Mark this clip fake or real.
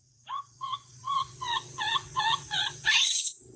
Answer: fake